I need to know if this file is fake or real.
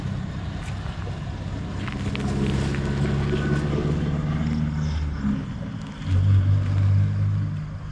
real